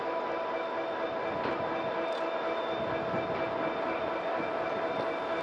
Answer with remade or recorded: recorded